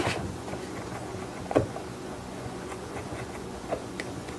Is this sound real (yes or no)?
no